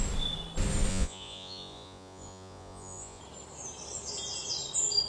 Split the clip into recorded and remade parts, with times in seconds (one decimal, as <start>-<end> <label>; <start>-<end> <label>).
0.0-0.9 recorded; 0.9-3.2 remade; 3.2-5.1 recorded